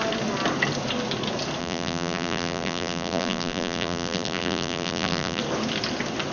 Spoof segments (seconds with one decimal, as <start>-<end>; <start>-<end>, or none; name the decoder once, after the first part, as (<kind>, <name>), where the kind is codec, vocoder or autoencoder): 1.6-5.4 (vocoder, BigVGAN v2)